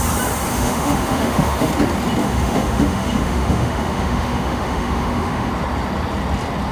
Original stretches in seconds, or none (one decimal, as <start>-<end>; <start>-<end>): 0.0-0.5; 1.7-2.2; 5.5-6.7